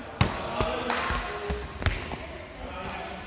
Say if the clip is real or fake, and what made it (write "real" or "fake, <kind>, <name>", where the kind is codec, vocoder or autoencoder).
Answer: real